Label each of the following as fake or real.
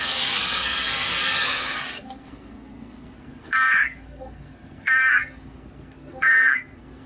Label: fake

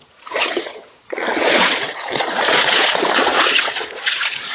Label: fake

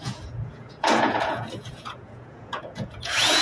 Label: fake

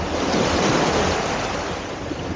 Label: real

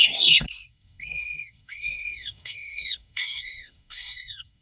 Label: fake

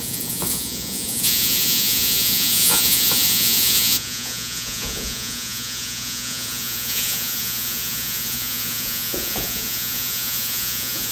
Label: fake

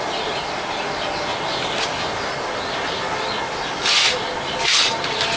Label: real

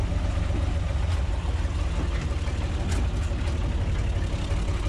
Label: real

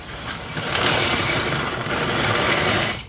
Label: fake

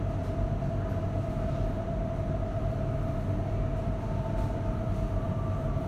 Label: real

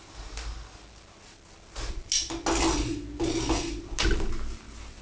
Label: real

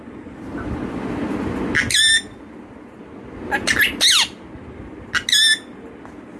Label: real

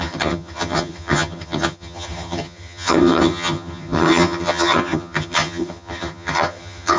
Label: fake